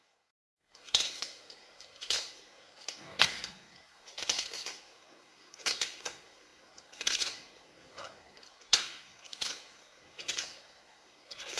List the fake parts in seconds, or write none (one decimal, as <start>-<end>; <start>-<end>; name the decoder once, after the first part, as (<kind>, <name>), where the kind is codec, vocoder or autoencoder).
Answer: 0.0-11.6 (codec, SNAC)